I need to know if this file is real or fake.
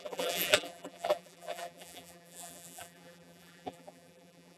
fake